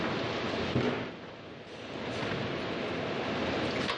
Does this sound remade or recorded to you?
recorded